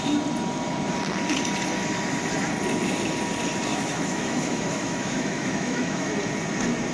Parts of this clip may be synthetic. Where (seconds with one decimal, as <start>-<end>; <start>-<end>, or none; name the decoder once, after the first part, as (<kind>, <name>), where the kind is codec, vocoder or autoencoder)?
3.7-6.1 (autoencoder, DAC-VAE)